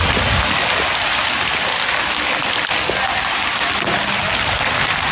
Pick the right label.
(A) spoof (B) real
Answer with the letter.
B